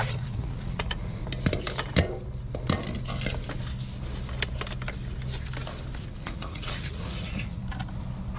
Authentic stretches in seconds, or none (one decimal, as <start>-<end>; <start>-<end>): 1.2-6.0; 7.6-8.4